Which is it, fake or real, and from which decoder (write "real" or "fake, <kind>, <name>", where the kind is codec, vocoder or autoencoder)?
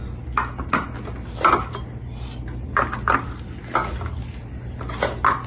real